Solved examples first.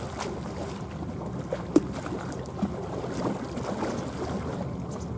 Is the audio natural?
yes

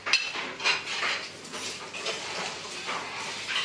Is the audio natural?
yes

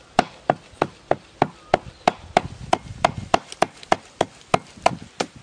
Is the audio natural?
yes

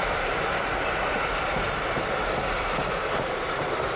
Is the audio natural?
yes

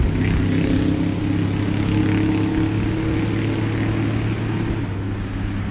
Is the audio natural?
yes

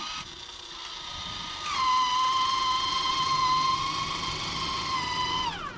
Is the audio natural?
yes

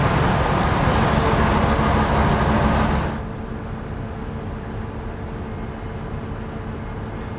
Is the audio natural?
yes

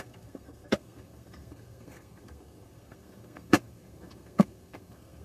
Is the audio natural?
no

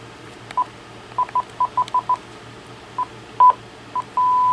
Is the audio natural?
yes